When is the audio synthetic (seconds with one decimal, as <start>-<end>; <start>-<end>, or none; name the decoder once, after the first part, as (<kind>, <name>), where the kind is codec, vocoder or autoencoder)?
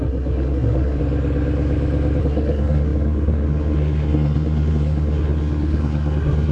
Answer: 0.0-1.0 (codec, SNAC); 2.2-6.5